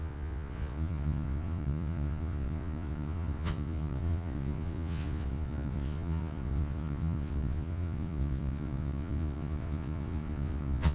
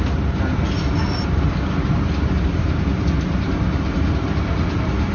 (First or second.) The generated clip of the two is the first